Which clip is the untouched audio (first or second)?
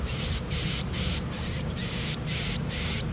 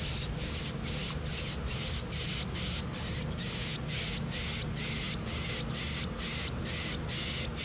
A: second